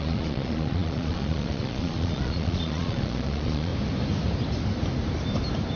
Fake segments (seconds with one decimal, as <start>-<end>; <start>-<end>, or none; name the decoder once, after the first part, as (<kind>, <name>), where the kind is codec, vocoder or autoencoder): 0.0-3.7 (vocoder, Vocos)